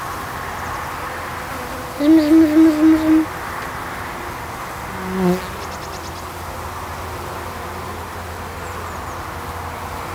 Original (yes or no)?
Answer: yes